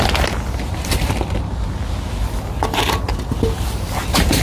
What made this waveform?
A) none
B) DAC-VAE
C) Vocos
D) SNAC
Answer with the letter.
A